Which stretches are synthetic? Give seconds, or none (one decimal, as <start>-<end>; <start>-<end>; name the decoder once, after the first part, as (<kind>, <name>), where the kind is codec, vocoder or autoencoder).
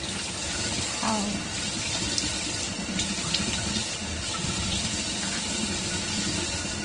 1.5-5.4 (vocoder, BigVGAN v2)